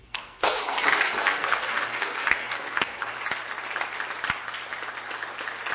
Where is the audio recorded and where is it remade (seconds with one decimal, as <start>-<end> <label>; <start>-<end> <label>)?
0.0-3.2 remade; 3.2-5.7 recorded